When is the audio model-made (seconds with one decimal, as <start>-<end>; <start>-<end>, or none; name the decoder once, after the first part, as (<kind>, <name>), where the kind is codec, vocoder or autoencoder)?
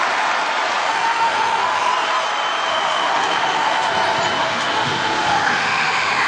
0.8-1.9 (autoencoder, DAC-VAE); 2.7-3.9; 4.4-6.3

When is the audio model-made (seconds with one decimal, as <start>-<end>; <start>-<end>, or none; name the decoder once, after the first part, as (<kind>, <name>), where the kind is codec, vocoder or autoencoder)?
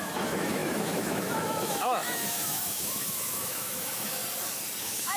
0.0-4.2 (autoencoder, DAC-VAE); 4.8-5.2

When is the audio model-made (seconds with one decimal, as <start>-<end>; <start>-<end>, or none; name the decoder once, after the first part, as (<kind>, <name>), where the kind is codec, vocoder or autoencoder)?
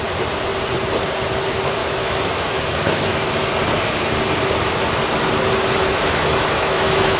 1.8-3.3 (autoencoder, DAC-VAE); 5.8-7.2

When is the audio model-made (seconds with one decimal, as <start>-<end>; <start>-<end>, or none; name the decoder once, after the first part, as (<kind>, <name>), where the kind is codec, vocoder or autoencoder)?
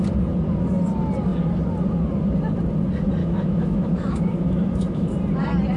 3.2-5.1 (autoencoder, DAC-VAE)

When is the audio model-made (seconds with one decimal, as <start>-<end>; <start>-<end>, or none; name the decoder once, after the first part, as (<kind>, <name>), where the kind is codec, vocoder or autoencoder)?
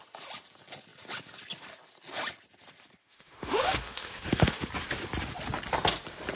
3.0-4.7 (autoencoder, DAC-VAE)